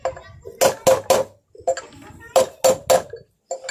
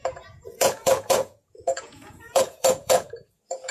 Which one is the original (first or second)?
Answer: first